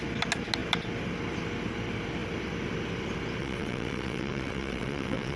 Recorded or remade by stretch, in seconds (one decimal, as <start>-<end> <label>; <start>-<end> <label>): 0.0-3.4 recorded; 3.4-5.4 remade